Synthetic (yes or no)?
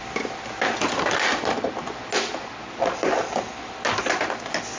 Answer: no